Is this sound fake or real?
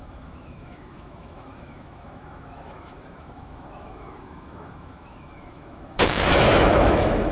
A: fake